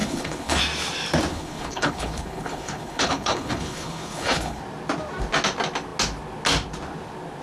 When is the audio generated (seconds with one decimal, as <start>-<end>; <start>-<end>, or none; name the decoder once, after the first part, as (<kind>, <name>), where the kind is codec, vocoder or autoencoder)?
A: 0.0-0.6 (codec, HILCodec); 1.3-4.6